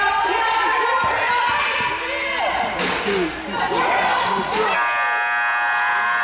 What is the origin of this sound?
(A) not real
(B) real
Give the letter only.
B